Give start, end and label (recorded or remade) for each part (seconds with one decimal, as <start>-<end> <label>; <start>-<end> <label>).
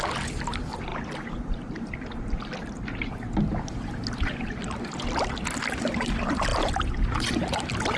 0.0-8.0 recorded